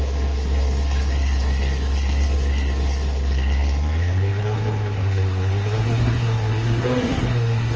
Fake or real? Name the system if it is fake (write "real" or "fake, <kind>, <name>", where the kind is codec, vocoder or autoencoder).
fake, codec, SNAC